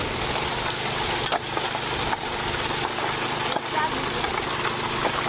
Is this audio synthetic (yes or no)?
no